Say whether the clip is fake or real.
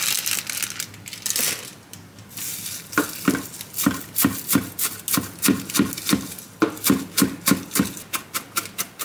real